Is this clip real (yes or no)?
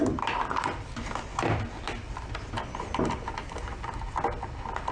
yes